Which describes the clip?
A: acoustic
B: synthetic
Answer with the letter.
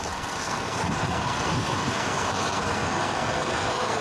B